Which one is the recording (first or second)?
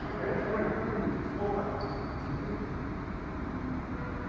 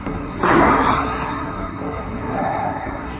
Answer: first